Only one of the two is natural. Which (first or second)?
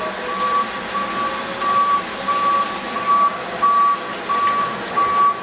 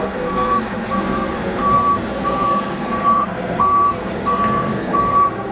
first